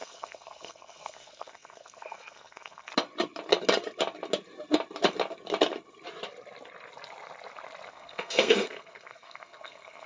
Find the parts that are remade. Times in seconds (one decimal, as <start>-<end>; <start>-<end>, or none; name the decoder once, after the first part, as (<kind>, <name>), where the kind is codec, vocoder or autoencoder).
0.0-2.9 (codec, SNAC); 7.9-10.1